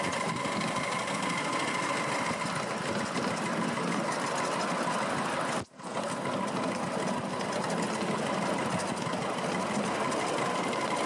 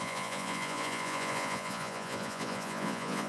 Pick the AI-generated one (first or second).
second